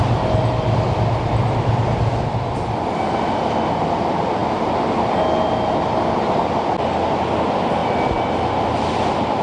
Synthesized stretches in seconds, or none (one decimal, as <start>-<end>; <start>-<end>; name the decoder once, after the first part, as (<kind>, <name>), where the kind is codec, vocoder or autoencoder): none